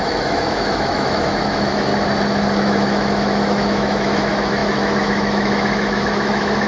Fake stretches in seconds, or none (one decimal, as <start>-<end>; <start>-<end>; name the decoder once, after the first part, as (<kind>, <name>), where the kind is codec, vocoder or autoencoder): 0.0-1.9 (autoencoder, DAC-VAE); 2.6-6.7